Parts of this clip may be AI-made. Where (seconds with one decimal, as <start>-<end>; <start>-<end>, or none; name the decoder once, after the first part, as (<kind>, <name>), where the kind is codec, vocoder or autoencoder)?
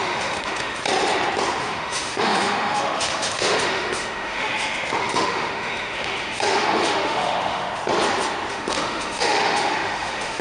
0.0-0.8 (autoencoder, DAC-VAE); 1.6-7.8; 8.5-10.4